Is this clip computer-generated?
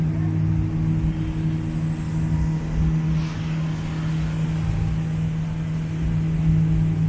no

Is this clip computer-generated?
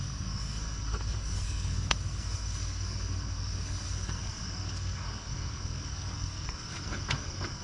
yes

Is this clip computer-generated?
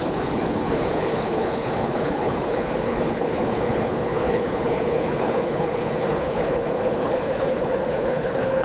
yes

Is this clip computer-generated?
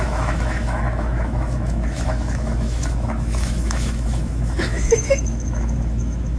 yes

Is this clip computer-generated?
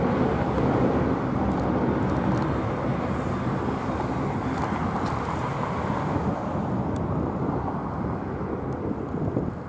no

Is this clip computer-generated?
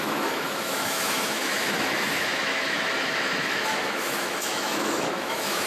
yes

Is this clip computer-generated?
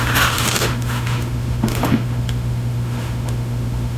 yes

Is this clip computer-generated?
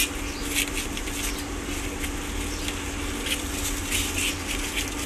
no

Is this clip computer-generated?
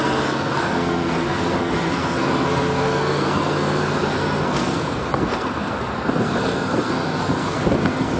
yes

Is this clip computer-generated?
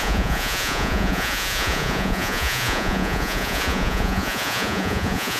yes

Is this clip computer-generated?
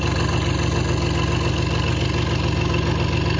no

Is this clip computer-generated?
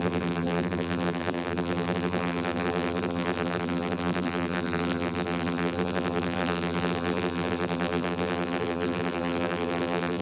yes